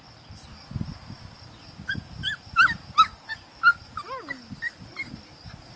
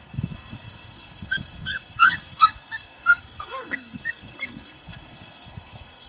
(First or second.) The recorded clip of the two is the first